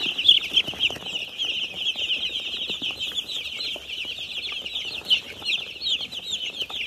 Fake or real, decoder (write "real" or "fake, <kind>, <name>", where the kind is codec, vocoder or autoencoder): real